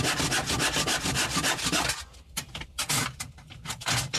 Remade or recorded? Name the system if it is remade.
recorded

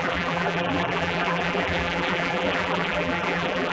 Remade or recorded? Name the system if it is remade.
remade, vocoder, BigVGAN v2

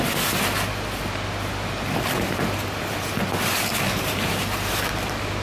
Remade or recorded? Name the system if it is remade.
recorded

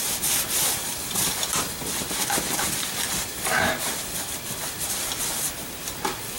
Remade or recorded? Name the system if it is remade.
recorded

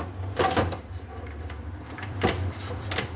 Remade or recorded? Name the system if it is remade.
remade, vocoder, BigVGAN v2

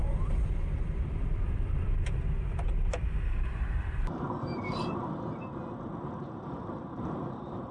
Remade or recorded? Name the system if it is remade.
remade, vocoder, BigVGAN v2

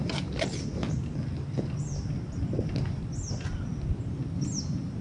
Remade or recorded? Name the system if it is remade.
recorded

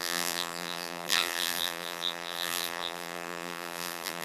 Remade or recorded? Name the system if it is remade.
remade, vocoder, BigVGAN v2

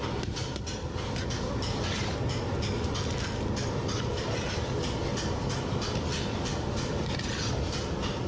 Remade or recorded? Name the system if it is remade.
recorded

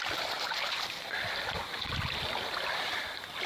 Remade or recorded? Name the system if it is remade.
recorded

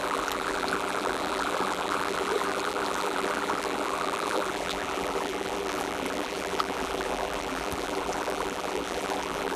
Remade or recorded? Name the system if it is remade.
remade, vocoder, BigVGAN v2